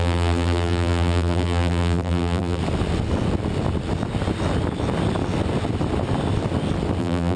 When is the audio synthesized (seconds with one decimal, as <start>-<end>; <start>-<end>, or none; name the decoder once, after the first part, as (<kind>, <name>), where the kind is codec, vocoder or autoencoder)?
0.0-2.6 (vocoder, BigVGAN v2); 7.0-7.4

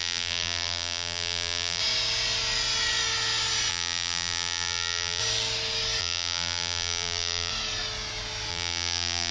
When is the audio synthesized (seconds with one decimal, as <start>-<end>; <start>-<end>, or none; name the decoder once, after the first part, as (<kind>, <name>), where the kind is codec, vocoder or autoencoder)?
0.0-1.8 (vocoder, BigVGAN v2); 3.7-5.2; 6.0-7.5; 8.5-9.3

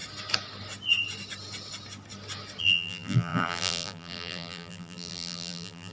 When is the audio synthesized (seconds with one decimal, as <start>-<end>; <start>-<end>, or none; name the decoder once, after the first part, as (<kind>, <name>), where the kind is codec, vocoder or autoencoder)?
2.6-5.9 (vocoder, BigVGAN v2)

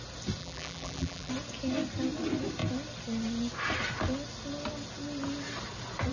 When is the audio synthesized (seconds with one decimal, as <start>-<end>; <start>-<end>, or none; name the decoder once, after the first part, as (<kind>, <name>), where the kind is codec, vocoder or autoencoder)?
0.4-1.3 (vocoder, BigVGAN v2)

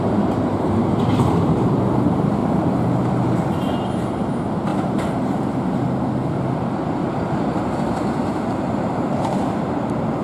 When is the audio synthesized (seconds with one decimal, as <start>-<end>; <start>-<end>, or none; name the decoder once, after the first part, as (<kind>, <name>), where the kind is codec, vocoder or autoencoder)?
0.0-10.2 (vocoder, BigVGAN v2)